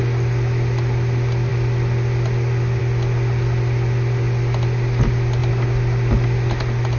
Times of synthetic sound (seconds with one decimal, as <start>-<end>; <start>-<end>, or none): none